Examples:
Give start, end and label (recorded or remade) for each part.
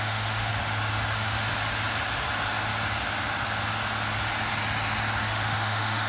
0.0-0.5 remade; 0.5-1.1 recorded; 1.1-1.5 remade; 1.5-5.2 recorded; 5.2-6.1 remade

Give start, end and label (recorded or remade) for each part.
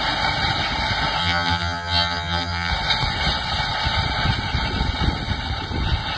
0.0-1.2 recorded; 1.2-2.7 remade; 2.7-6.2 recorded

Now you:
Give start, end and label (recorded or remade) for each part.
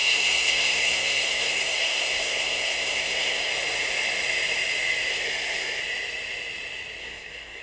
0.0-3.5 remade; 3.5-5.1 recorded; 5.1-5.8 remade; 5.8-7.0 recorded; 7.0-7.6 remade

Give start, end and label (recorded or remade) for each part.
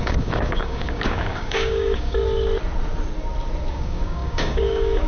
0.0-2.2 remade; 2.2-3.7 recorded; 3.7-5.1 remade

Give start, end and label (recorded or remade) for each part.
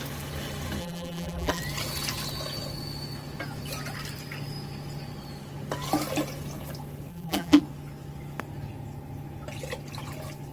0.0-0.8 recorded; 0.8-1.6 remade; 1.6-7.1 recorded; 7.1-7.6 remade; 7.6-10.5 recorded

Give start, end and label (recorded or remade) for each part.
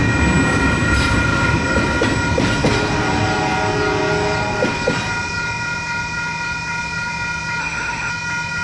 0.0-7.6 recorded; 7.6-8.1 remade; 8.1-8.6 recorded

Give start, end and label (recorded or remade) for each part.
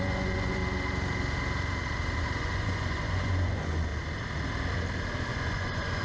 0.0-0.6 remade; 0.6-2.4 recorded; 2.4-3.9 remade; 3.9-5.3 recorded; 5.3-6.0 remade